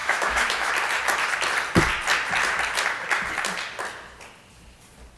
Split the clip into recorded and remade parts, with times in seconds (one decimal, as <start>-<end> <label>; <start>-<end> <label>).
0.0-0.7 remade; 0.7-5.2 recorded